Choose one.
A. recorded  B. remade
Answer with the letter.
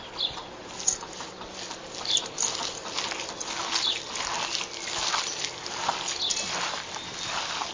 A